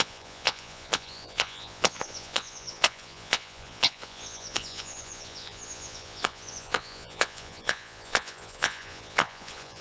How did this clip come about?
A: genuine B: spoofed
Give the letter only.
B